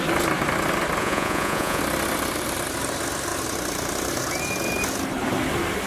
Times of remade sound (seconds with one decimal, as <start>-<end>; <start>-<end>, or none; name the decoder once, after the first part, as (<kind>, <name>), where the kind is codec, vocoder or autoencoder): 1.0-1.8 (vocoder, Vocos)